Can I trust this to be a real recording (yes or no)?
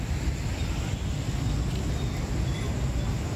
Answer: yes